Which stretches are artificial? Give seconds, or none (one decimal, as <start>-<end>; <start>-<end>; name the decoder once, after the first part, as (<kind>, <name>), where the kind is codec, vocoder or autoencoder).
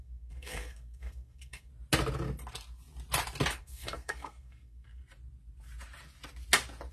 0.0-1.7 (codec, SNAC); 3.6-5.0